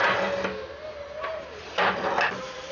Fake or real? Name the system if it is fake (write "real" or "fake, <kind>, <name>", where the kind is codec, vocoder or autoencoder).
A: real